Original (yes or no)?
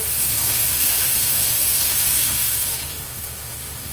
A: no